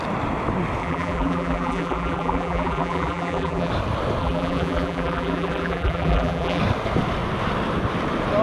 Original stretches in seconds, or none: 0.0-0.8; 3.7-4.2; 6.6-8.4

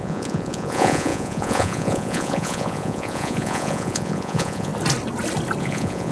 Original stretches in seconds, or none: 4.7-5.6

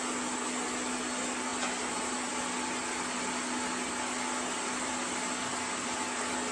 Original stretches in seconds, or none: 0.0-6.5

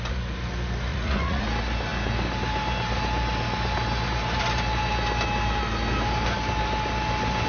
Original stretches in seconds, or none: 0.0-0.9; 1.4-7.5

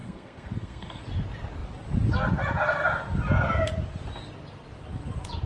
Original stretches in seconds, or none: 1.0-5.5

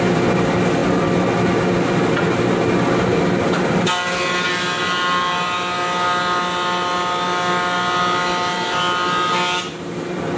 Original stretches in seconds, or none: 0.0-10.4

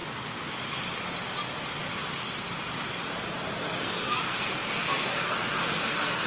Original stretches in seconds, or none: 0.0-3.8